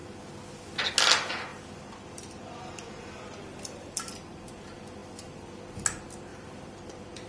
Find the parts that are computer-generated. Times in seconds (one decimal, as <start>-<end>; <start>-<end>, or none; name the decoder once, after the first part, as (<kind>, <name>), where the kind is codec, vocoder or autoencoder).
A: 1.5-4.6 (vocoder, BigVGAN v2); 5.0-5.6; 6.3-7.3